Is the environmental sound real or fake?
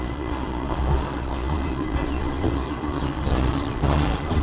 fake